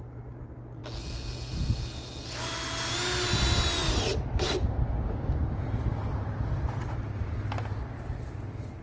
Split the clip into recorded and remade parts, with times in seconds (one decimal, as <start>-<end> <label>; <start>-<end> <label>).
0.0-8.8 recorded